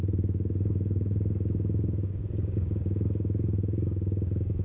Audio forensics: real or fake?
fake